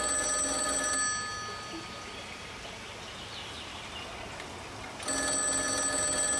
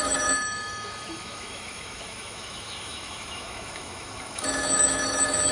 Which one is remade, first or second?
second